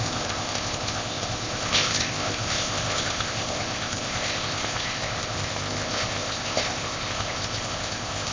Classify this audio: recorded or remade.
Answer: remade